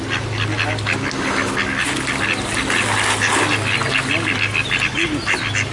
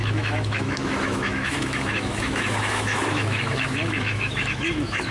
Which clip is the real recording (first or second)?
first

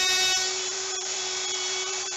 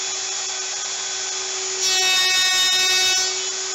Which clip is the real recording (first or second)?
second